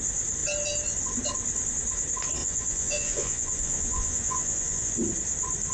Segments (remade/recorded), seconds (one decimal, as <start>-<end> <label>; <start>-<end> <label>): 0.0-2.4 recorded; 2.4-4.9 remade; 4.9-5.7 recorded